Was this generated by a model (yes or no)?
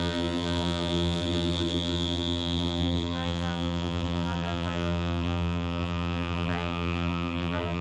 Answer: yes